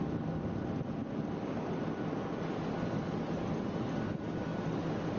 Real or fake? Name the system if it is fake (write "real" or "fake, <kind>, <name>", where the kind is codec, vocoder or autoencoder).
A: real